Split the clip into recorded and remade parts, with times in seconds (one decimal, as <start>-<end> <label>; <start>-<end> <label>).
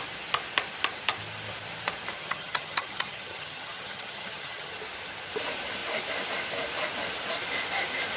0.0-2.2 recorded; 2.2-4.7 remade; 4.7-8.2 recorded